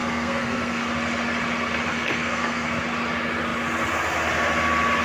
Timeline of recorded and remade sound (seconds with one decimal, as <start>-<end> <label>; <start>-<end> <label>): 0.0-0.8 remade; 0.8-1.9 recorded; 1.9-2.8 remade; 2.8-5.0 recorded